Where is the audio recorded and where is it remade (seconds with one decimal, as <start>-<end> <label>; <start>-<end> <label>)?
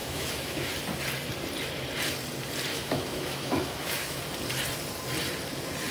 0.0-0.7 remade; 0.7-2.7 recorded; 2.7-4.2 remade; 4.2-5.9 recorded